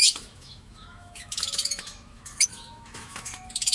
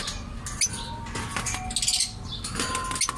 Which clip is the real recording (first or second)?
second